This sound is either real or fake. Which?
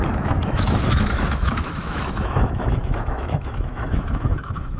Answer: fake